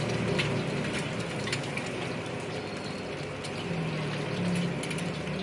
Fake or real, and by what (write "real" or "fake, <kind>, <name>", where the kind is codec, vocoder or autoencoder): real